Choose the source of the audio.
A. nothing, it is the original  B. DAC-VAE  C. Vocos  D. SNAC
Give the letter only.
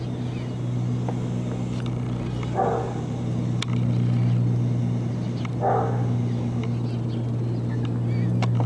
A